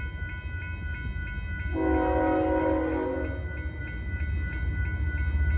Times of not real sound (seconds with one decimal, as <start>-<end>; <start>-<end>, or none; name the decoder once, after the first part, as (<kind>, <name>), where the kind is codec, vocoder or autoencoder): none